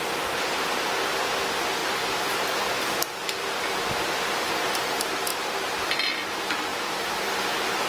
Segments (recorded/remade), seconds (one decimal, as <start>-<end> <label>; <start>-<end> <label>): 0.0-1.8 recorded; 1.8-3.2 remade; 3.2-6.7 recorded; 6.7-7.9 remade

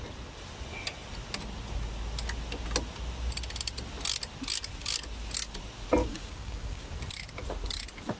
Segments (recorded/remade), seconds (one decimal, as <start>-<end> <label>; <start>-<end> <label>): 0.0-6.0 recorded; 6.0-6.9 remade; 6.9-8.2 recorded